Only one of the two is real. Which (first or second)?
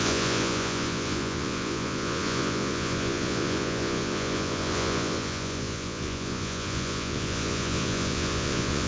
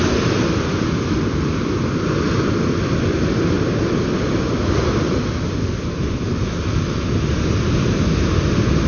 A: second